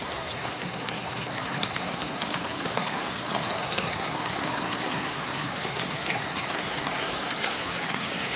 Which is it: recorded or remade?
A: remade